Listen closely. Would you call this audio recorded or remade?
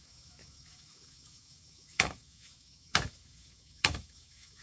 remade